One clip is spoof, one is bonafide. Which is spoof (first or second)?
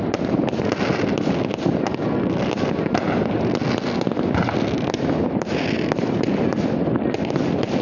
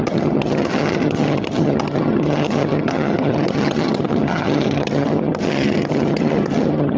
second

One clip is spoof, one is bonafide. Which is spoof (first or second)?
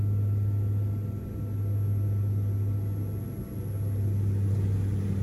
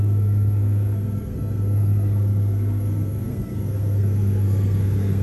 second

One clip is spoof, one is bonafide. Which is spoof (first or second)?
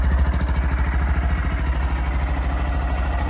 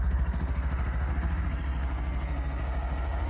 second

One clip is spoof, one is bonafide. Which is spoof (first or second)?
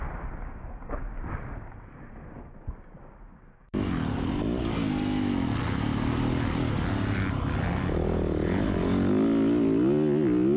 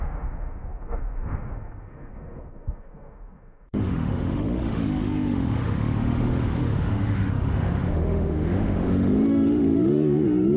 second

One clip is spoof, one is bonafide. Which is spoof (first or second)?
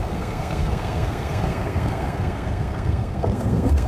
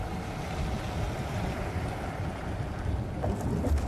first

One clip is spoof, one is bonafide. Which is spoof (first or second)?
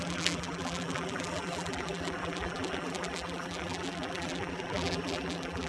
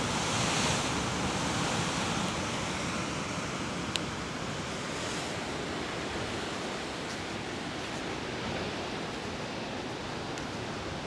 first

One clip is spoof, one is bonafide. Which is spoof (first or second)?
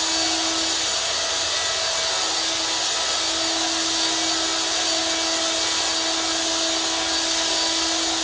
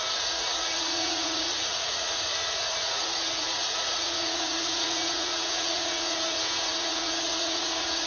second